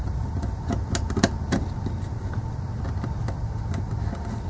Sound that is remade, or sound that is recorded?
recorded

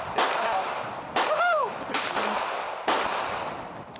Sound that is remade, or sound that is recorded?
recorded